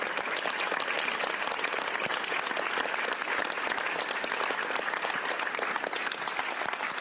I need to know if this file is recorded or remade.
recorded